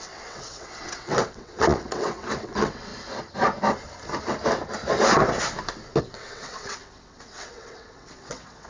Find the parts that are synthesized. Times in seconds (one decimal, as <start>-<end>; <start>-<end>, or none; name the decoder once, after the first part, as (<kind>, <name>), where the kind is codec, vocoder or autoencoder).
0.0-2.9 (vocoder, WaveNeXt); 6.0-8.7